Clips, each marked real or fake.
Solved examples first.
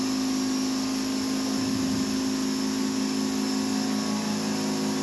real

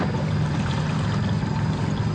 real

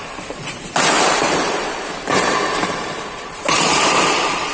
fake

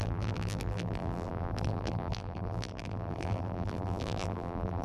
fake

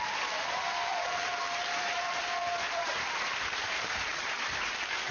fake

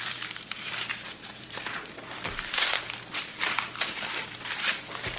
fake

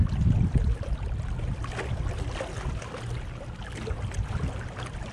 real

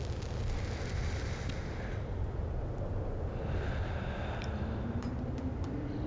real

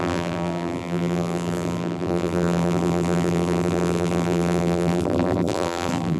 fake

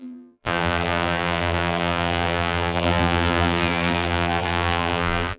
fake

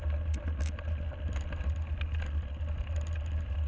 real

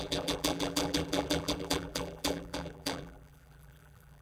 fake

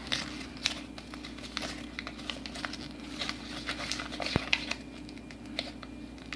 real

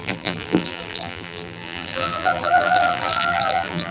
fake